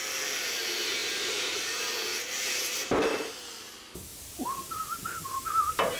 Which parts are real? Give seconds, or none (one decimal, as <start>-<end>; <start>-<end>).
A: 0.0-1.0; 1.8-2.8; 3.3-4.1